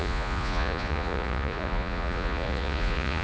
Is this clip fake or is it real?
fake